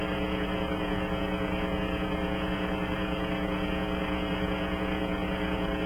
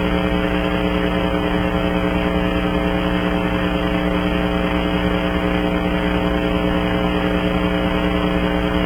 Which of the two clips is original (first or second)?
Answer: second